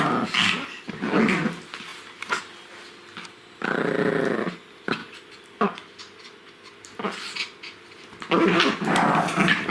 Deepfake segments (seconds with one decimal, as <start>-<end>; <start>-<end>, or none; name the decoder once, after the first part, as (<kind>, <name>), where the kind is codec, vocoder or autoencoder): none

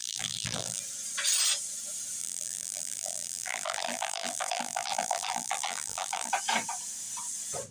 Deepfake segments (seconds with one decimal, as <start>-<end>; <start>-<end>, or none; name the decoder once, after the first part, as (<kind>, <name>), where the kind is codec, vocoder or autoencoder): 0.0-0.8 (vocoder, BigVGAN v2); 2.2-6.3

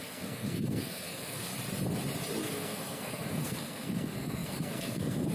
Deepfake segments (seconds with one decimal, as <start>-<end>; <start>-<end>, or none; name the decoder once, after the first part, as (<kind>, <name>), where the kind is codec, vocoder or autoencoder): 0.0-1.5 (codec, SNAC); 2.4-5.3